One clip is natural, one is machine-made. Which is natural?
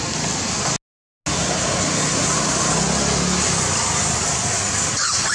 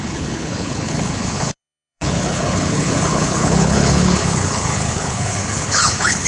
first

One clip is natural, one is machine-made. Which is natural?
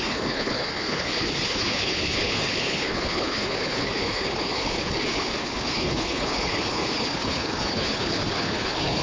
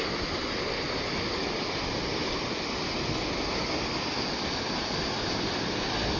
second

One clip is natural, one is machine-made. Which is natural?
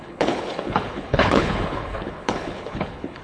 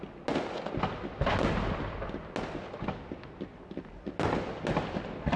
second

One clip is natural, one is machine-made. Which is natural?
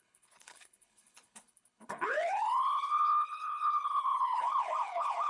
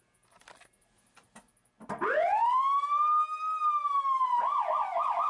second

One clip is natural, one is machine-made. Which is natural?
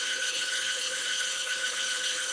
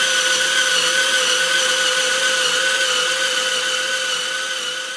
second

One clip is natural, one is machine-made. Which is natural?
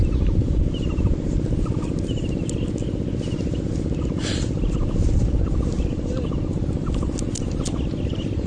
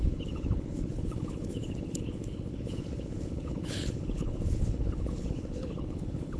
first